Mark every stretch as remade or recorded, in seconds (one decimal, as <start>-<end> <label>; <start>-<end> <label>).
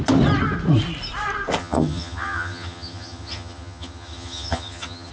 0.0-1.6 recorded; 1.6-5.1 remade